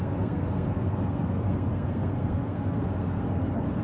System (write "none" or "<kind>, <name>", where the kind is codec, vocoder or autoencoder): codec, SNAC